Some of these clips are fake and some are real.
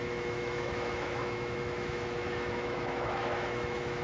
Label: fake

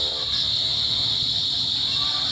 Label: real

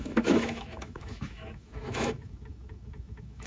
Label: fake